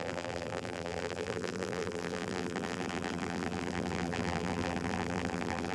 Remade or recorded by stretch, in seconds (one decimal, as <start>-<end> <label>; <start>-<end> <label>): 0.0-5.7 remade